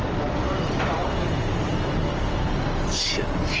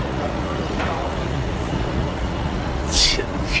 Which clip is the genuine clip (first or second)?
first